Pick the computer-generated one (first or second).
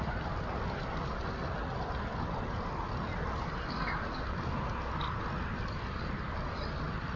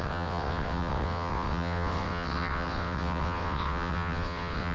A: second